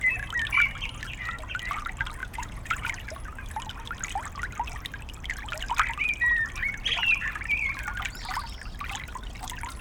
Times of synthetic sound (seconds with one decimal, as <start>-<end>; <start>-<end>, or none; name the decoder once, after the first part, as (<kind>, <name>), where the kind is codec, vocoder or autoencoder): 2.2-2.9 (vocoder, Vocos)